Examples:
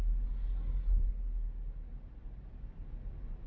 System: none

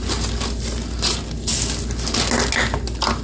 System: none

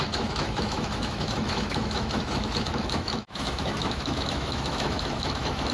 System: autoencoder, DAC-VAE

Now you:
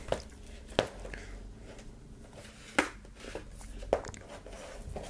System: none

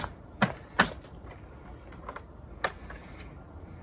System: none